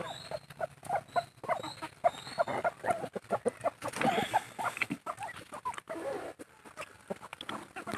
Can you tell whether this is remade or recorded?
recorded